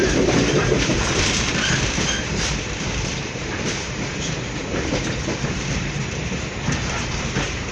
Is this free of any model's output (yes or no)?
no